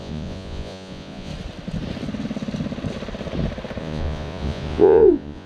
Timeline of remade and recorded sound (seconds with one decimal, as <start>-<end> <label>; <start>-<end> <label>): 0.0-1.3 remade; 1.3-3.8 recorded; 3.8-5.5 remade